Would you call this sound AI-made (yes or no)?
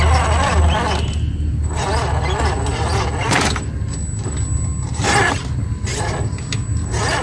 no